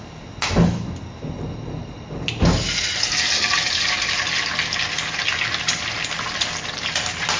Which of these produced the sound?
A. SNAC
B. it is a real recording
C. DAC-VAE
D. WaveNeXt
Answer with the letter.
B